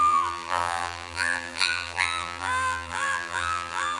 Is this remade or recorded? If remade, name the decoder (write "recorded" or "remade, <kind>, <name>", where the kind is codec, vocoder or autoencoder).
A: remade, vocoder, BigVGAN v2